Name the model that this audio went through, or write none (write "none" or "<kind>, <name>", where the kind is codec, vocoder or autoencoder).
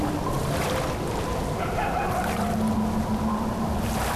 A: none